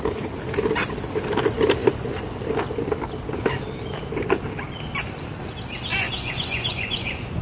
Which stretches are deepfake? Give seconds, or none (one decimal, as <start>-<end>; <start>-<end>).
5.9-7.4